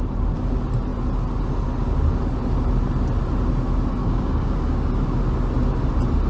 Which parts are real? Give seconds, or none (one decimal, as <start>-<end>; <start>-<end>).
0.0-4.0; 4.9-6.3

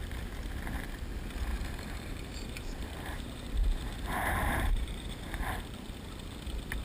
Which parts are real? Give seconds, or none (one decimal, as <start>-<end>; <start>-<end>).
0.0-1.5; 5.6-6.8

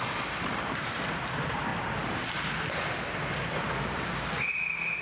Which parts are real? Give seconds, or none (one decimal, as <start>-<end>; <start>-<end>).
1.7-3.1

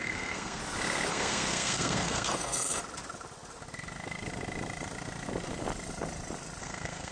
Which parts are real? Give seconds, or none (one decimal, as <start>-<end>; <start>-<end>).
0.6-1.1; 2.8-6.6

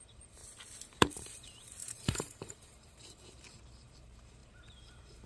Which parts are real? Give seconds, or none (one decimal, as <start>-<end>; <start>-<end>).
0.4-1.1